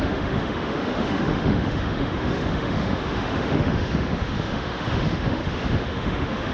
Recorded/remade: remade